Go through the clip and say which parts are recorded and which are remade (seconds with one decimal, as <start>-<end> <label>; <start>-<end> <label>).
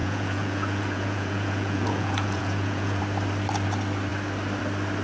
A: 0.0-3.0 remade; 3.0-5.0 recorded